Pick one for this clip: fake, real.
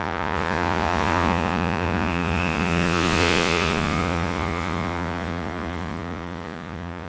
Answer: fake